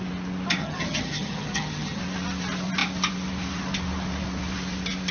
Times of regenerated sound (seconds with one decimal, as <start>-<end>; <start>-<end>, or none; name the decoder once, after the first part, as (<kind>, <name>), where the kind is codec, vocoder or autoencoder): 0.6-2.0 (vocoder, HiFi-GAN)